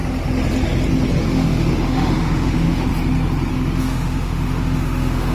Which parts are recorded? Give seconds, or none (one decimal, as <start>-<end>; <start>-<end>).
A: 0.0-1.2; 2.9-3.5